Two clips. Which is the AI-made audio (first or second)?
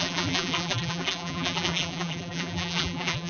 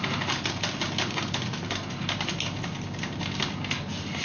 first